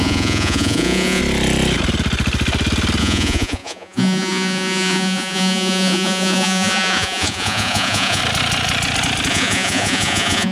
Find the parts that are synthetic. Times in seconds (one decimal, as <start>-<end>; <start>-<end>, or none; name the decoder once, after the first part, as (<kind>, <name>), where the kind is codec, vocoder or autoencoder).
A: 0.0-1.2 (vocoder, Vocos); 3.0-8.2; 9.3-10.5